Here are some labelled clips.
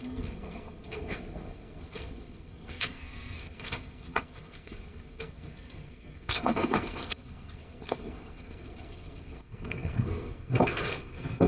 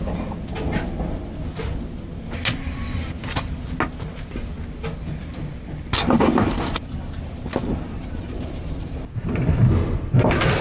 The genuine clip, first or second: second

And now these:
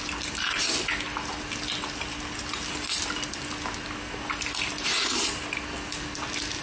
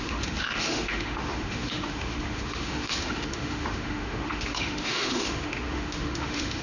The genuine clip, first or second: first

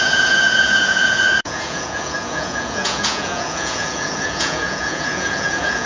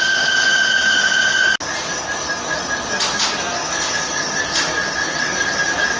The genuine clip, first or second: second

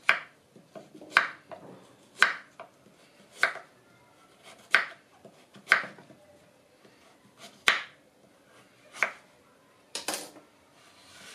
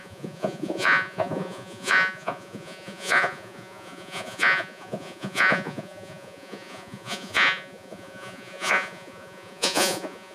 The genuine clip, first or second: first